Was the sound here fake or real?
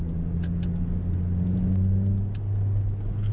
real